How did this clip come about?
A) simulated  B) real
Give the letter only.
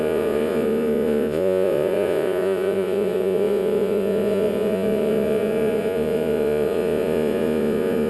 A